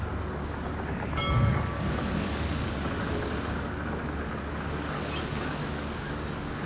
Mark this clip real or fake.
fake